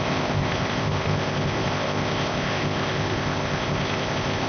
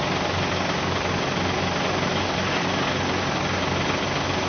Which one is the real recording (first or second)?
second